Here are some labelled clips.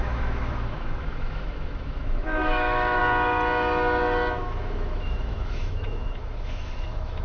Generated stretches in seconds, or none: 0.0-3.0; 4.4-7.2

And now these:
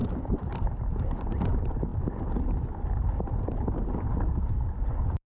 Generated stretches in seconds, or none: 0.0-1.1; 1.9-3.4

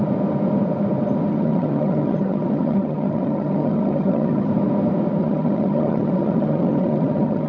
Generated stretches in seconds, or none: 1.3-4.5; 5.2-7.5

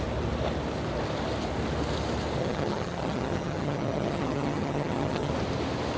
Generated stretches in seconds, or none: 2.4-5.3

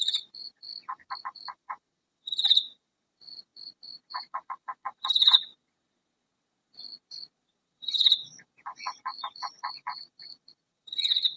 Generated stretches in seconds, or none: 0.0-0.7; 1.2-11.4